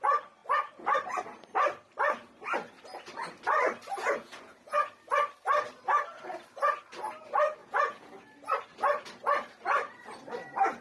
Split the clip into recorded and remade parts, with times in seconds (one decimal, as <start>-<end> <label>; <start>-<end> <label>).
0.0-4.0 recorded; 4.0-4.9 remade; 4.9-7.6 recorded; 7.6-8.1 remade; 8.1-10.8 recorded